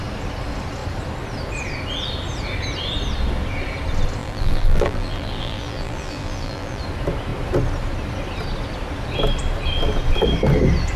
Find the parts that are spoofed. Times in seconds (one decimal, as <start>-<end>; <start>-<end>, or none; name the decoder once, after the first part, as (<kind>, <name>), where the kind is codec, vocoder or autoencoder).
4.2-6.8 (vocoder, BigVGAN v2)